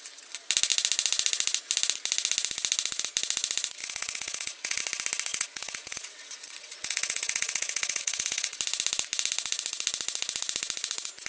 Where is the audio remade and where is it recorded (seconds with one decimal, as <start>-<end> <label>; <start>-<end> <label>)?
0.0-3.8 recorded; 3.8-4.8 remade; 4.8-5.3 recorded; 5.3-8.6 remade; 8.6-11.3 recorded